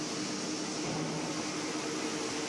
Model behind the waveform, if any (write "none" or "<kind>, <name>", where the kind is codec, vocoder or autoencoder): none